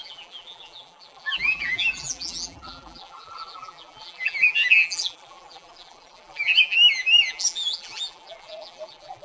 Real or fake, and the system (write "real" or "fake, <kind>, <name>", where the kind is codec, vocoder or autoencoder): fake, vocoder, BigVGAN v2